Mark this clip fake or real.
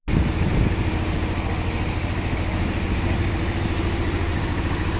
real